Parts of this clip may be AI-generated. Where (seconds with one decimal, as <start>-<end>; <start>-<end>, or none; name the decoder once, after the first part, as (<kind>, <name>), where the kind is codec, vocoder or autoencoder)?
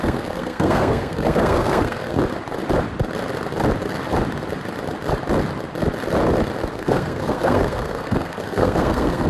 0.0-2.2 (codec, SNAC); 6.7-9.3